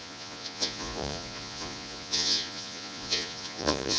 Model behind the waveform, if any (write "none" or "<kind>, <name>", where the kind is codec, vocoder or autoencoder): vocoder, Vocos